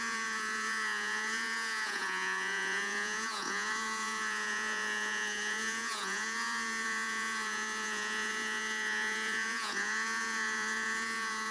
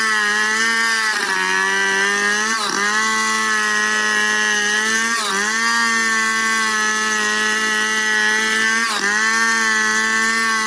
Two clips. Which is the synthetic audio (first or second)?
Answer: first